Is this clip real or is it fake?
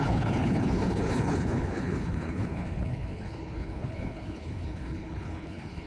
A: fake